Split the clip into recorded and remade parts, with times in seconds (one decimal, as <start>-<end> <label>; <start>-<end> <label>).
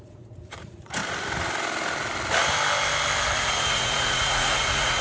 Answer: 0.0-1.0 remade; 1.0-3.4 recorded; 3.4-5.0 remade